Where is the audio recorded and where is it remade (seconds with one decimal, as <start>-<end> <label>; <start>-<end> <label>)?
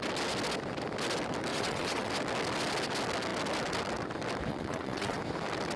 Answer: 0.0-1.5 recorded; 1.5-2.1 remade; 2.1-4.5 recorded; 4.5-5.2 remade; 5.2-5.8 recorded